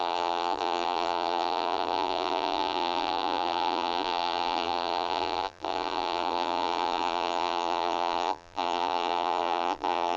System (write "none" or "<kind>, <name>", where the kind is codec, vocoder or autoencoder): vocoder, BigVGAN v2